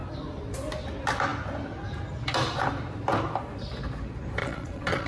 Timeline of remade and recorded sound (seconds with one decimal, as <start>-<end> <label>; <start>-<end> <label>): 0.0-4.4 recorded; 4.4-5.1 remade